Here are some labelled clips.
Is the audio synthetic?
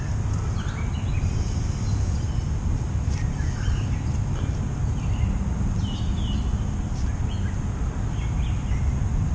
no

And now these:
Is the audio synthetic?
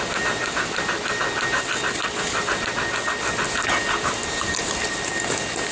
no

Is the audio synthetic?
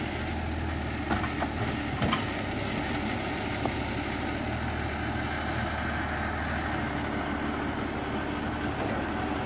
no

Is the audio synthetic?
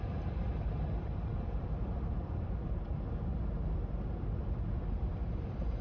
yes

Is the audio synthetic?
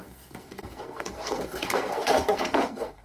yes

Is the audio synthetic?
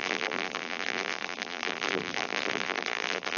yes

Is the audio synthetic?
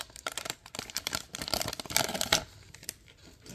yes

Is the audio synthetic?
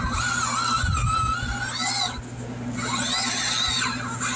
no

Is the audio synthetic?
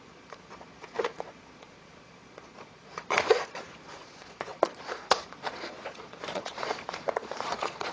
yes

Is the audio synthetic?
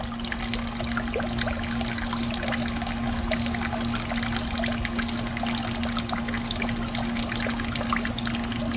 no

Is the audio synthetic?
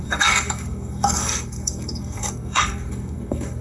yes